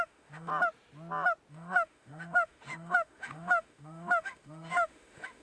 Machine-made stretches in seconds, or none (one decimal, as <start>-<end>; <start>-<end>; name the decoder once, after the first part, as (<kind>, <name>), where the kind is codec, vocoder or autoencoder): 0.0-0.5 (autoencoder, DAC-VAE); 1.5-5.4